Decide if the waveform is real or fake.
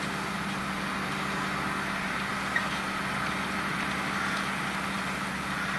real